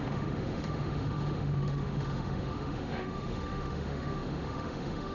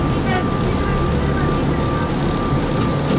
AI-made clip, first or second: first